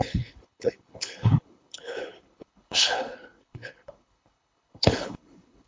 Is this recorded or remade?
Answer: remade